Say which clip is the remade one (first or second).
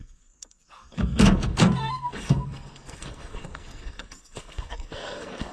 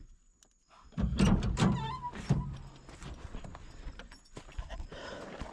first